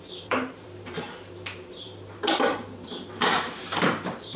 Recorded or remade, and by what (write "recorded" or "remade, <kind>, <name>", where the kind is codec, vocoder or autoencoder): remade, vocoder, BigVGAN v2